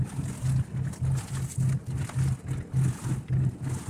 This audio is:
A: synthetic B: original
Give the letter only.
B